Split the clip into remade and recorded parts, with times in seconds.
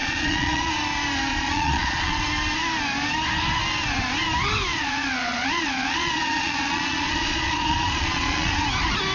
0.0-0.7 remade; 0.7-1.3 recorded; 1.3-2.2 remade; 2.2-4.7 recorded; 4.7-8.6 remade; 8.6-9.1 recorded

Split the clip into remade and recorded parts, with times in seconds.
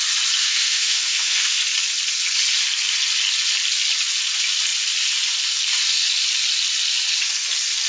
0.0-0.4 recorded; 0.4-1.6 remade; 1.6-7.9 recorded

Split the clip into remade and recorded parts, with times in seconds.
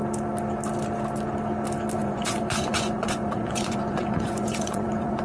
0.0-2.0 recorded; 2.0-5.2 remade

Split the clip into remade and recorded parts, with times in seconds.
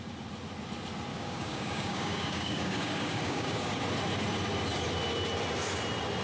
0.0-1.1 recorded; 1.1-3.8 remade; 3.8-6.2 recorded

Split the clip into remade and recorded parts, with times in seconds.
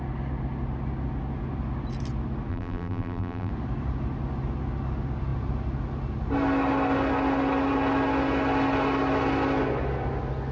0.0-2.5 recorded; 2.5-3.5 remade; 3.5-10.5 recorded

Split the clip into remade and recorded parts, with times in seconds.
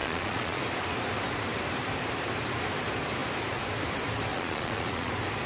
0.0-0.6 remade; 0.6-4.3 recorded; 4.3-5.1 remade; 5.1-5.5 recorded